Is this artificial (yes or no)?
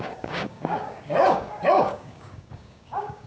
yes